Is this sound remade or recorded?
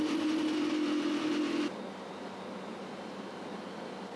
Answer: recorded